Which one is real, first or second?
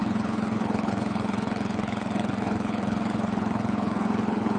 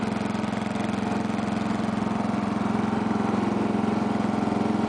second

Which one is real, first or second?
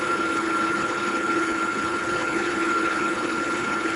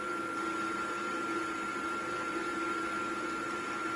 second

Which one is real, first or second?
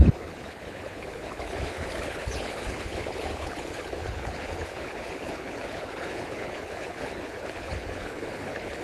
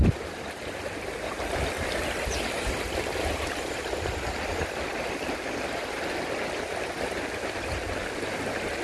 second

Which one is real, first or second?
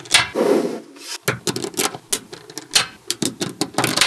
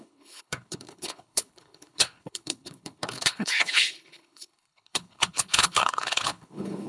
first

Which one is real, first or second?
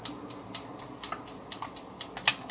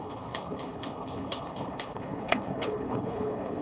first